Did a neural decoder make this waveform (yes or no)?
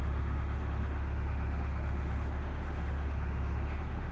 yes